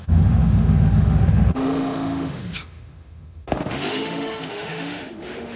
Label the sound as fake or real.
fake